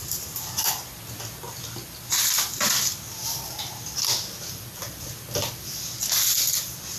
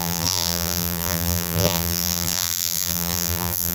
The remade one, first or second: second